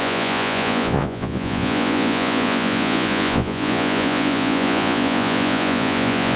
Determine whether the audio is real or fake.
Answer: fake